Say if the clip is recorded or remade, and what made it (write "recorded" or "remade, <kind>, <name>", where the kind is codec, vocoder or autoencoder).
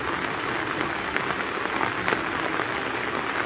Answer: recorded